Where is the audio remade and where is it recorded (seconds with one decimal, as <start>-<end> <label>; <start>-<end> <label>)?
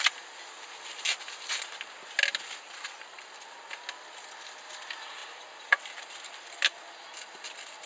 0.0-7.9 recorded